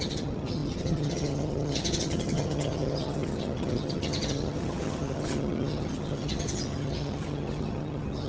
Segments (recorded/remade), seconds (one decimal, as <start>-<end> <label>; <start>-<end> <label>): 0.0-8.3 remade